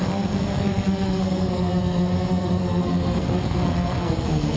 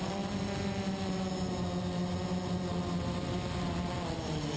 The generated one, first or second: first